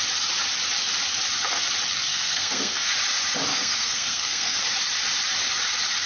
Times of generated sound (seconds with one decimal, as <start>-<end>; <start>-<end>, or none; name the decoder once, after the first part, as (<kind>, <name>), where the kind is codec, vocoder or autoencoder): 2.1-2.9 (codec, SNAC); 3.5-4.6